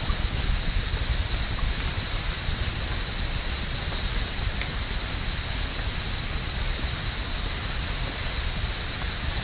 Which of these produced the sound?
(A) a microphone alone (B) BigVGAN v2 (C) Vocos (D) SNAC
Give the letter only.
A